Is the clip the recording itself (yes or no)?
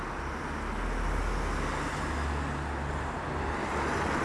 yes